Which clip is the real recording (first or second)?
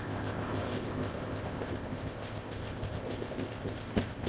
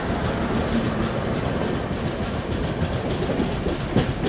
second